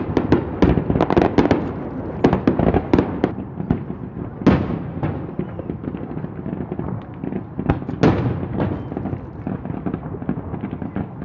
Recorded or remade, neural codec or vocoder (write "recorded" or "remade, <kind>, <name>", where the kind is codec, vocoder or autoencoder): recorded